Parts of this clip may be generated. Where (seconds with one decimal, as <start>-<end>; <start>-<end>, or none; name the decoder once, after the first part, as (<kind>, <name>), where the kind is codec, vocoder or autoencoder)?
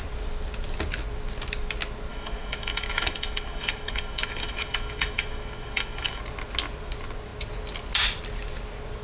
2.1-6.2 (autoencoder, DAC-VAE)